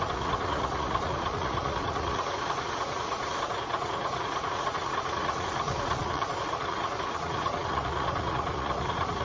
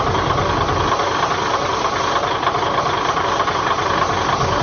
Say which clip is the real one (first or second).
second